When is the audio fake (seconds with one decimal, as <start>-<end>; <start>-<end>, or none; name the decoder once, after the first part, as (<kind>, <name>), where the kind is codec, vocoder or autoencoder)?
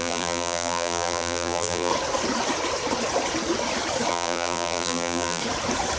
0.0-1.9 (vocoder, BigVGAN v2); 4.1-5.4